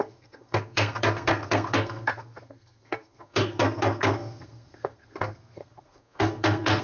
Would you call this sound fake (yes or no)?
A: yes